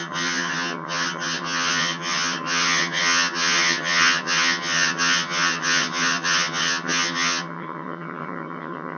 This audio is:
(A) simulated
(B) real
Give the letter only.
A